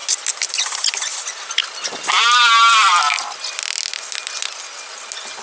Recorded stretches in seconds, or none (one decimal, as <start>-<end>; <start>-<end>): 0.0-5.4